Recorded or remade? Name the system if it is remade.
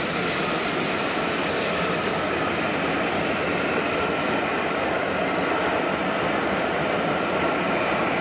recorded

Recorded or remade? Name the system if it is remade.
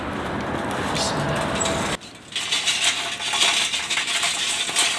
recorded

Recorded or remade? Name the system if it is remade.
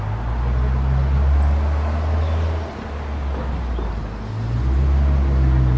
recorded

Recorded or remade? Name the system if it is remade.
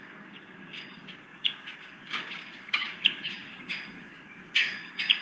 remade, codec, DAC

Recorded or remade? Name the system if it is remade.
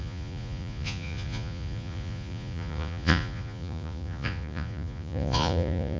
remade, vocoder, Vocos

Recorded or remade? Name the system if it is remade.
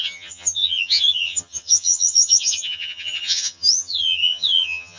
remade, vocoder, HiFi-GAN